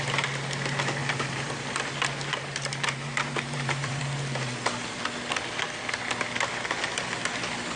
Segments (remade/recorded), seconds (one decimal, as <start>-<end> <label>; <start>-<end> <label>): 0.0-1.0 recorded; 1.0-1.9 remade; 1.9-2.3 recorded; 2.3-4.0 remade; 4.0-7.8 recorded